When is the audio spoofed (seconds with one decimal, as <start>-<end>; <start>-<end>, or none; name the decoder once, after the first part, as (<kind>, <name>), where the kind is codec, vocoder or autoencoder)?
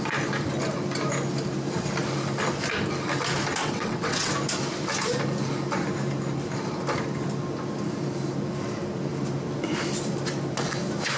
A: 3.6-4.3 (vocoder, WaveNeXt)